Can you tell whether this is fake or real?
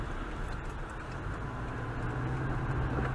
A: real